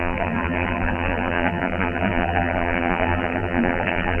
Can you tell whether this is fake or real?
fake